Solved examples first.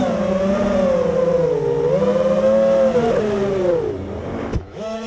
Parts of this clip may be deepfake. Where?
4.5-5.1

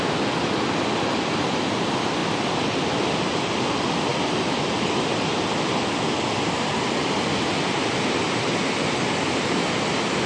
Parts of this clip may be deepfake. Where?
none

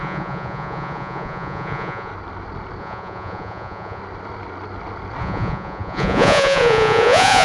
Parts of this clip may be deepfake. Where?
0.0-2.1; 2.8-4.0; 5.2-7.4